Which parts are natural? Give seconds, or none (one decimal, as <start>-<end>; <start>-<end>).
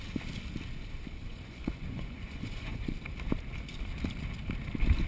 0.0-1.2; 2.9-5.1